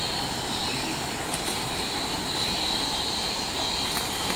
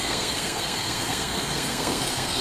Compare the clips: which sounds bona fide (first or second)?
first